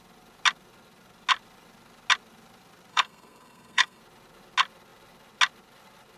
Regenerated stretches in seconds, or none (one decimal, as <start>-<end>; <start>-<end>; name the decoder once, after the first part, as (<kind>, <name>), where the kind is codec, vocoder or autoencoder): 2.9-4.0 (codec, SNAC)